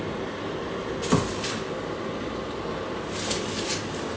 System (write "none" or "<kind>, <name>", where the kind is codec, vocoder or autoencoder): none